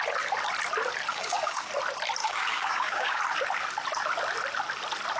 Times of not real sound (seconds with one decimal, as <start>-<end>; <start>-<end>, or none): 1.1-1.7; 2.2-3.2